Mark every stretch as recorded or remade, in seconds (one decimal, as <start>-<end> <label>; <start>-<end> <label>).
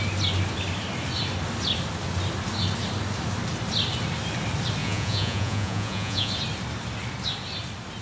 0.0-4.8 recorded; 4.8-6.3 remade; 6.3-8.0 recorded